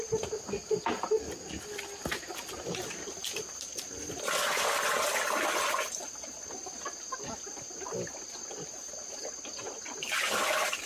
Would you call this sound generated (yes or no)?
no